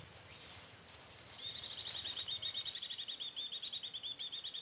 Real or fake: real